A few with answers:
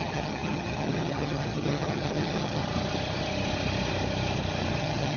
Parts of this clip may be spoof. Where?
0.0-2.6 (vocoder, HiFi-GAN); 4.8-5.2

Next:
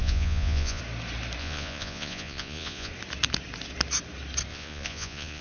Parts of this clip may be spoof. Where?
0.0-0.8 (vocoder, Vocos); 1.4-2.9; 4.5-5.4